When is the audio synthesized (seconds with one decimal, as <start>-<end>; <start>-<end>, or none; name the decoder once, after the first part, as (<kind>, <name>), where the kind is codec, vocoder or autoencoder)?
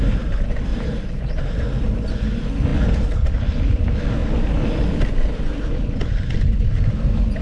0.7-1.5 (vocoder, BigVGAN v2)